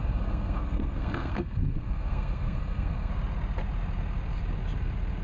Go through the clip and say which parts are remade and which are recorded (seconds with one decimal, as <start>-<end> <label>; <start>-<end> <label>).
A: 0.0-3.1 remade; 3.1-5.2 recorded